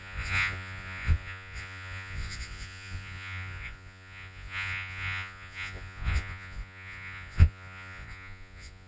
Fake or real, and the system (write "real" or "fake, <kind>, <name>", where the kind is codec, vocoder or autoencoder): fake, vocoder, Vocos